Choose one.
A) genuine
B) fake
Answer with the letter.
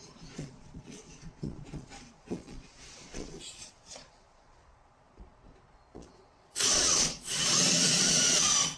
B